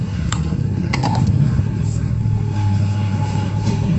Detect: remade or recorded remade